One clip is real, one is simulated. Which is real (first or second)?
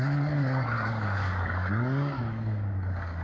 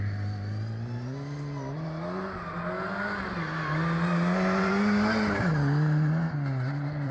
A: second